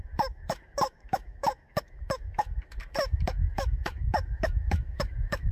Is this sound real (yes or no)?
no